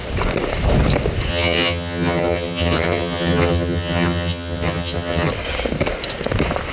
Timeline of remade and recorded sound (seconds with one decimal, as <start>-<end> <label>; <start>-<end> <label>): 0.0-1.3 recorded; 1.3-5.3 remade; 5.3-6.7 recorded